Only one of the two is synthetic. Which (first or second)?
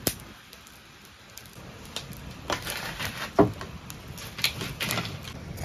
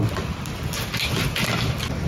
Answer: first